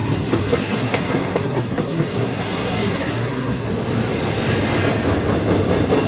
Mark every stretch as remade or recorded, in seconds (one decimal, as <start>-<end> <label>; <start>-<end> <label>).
0.0-3.7 remade; 3.7-6.1 recorded